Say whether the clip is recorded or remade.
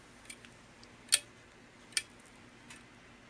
recorded